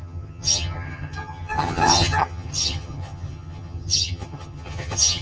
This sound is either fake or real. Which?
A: fake